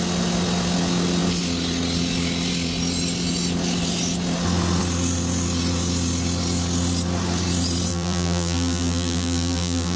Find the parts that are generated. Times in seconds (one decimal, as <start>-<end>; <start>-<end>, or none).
7.9-10.0